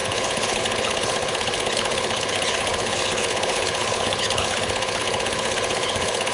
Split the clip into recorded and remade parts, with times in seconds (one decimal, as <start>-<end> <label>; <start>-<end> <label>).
0.0-6.3 remade